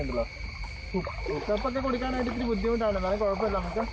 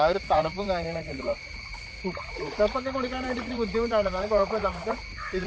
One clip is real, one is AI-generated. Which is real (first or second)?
first